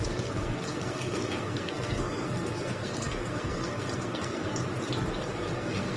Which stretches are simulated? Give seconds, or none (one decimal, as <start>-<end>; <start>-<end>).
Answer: 0.0-4.5; 5.3-6.0